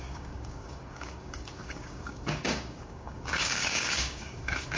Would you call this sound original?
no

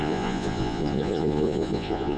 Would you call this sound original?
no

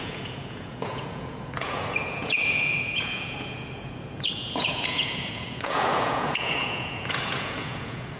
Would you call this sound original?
no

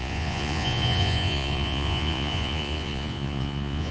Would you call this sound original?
no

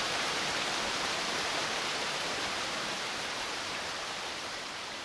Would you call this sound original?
no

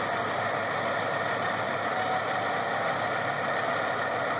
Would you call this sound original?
yes